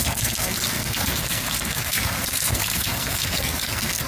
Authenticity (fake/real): fake